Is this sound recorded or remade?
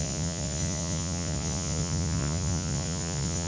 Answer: remade